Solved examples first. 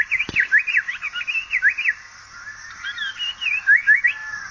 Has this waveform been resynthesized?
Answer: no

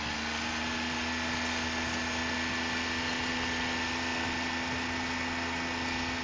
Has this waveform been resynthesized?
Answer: no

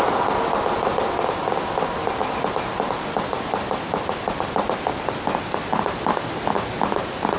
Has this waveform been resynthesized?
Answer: no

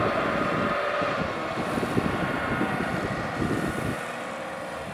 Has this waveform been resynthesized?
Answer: no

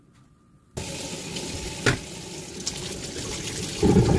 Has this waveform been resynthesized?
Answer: no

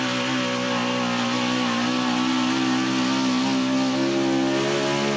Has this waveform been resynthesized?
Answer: no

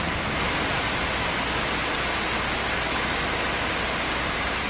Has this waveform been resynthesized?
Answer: no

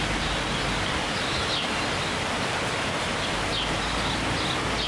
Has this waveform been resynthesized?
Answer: no